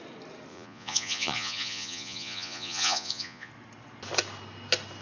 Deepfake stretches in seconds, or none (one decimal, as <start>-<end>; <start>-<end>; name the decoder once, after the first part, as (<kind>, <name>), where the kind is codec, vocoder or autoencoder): 0.5-3.5 (vocoder, Vocos)